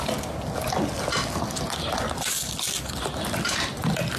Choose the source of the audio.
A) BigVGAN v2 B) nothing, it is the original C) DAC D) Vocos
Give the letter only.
B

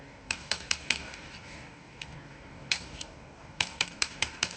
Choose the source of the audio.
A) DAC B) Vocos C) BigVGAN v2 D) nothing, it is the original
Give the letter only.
A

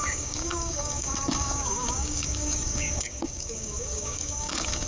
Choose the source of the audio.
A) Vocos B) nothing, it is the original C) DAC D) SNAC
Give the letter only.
C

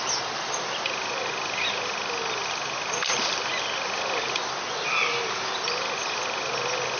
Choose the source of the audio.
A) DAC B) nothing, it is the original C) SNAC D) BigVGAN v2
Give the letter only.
B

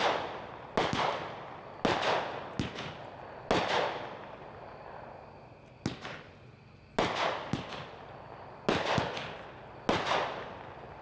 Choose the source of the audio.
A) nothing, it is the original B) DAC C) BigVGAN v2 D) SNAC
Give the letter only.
A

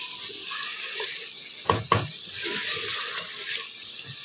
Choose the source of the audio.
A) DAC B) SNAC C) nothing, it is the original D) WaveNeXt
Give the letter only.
C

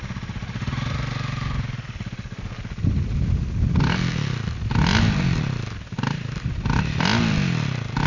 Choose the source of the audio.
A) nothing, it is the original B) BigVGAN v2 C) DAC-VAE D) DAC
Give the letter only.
A